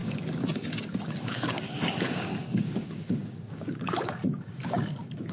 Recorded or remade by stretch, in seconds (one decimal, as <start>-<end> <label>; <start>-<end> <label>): 0.0-5.3 remade